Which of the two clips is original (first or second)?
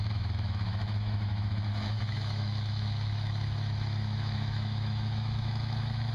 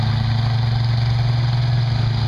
second